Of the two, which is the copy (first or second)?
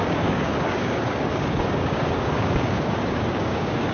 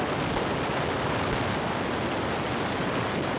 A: first